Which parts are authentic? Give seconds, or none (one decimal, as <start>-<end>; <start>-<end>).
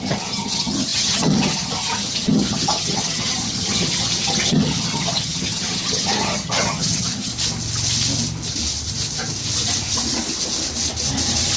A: 7.3-11.6